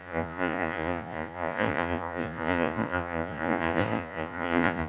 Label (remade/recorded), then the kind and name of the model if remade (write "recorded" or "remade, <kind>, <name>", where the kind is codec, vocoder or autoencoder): remade, vocoder, Vocos